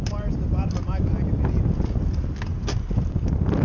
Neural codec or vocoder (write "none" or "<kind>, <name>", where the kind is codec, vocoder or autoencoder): none